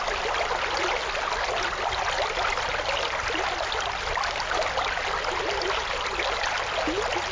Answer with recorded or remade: recorded